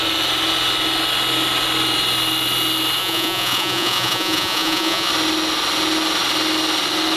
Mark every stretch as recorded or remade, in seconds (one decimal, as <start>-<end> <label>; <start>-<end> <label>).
0.0-3.0 recorded; 3.0-5.1 remade; 5.1-7.2 recorded